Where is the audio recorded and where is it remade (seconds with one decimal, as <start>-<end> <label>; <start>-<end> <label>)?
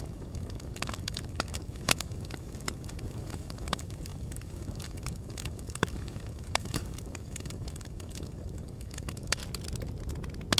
0.0-9.4 remade; 9.4-10.6 recorded